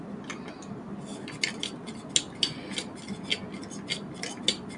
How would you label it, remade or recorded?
recorded